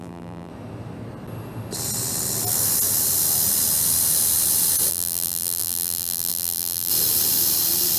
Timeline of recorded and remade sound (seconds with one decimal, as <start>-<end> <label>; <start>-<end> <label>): 0.0-0.5 remade; 0.5-4.9 recorded; 4.9-6.9 remade; 6.9-8.0 recorded